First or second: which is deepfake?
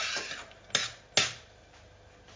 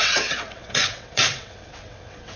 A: second